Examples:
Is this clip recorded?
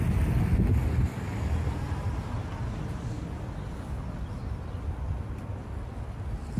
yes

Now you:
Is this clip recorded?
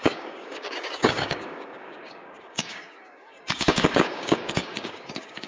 no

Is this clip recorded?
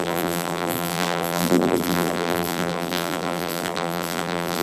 no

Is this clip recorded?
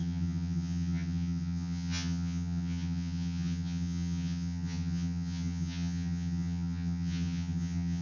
no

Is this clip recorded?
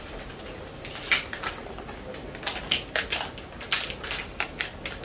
yes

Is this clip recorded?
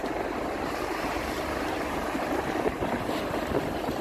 no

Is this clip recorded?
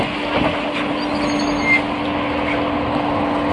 yes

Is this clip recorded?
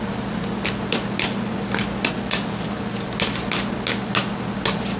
yes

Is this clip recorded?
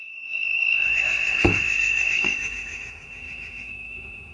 no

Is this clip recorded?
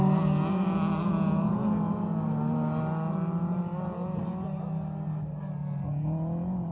yes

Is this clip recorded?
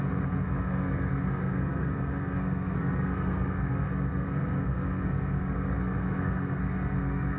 no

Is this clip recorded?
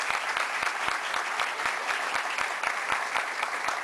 yes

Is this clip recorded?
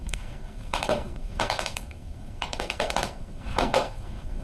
no